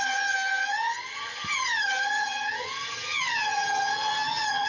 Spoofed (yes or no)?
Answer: yes